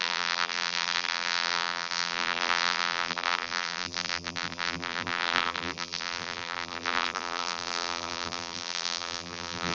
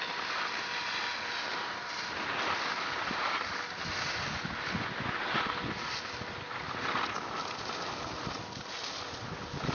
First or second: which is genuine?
second